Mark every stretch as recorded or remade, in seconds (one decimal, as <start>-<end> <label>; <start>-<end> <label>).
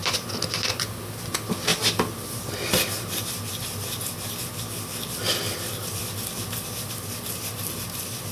0.0-8.3 recorded